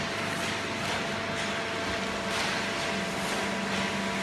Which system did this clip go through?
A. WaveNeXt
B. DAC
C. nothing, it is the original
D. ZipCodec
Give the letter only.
C